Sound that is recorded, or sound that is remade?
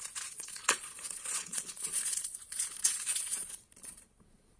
remade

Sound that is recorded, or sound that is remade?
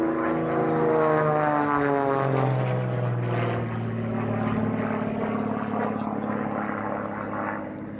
recorded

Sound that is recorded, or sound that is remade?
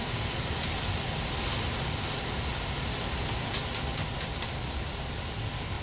recorded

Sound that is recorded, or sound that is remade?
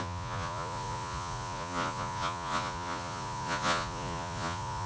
remade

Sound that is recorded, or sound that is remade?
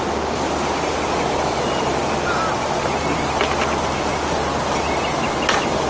recorded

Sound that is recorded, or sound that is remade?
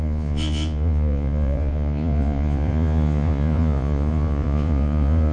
remade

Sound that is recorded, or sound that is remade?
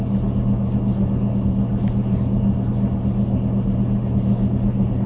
recorded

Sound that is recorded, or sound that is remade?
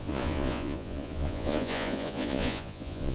remade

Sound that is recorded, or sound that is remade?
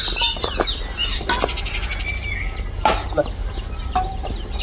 recorded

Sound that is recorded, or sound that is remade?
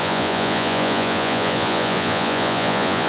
remade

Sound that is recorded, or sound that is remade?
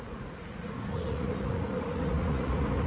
remade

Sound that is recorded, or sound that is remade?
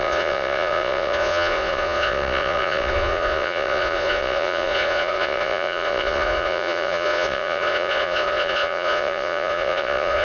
remade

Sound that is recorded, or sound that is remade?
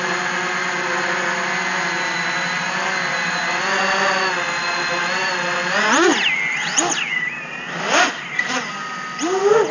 recorded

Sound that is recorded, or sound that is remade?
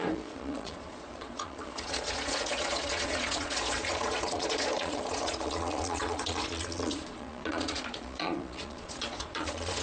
remade